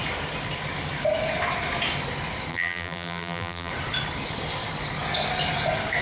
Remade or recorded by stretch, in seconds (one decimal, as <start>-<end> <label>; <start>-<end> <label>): 0.0-2.5 recorded; 2.5-3.7 remade; 3.7-6.0 recorded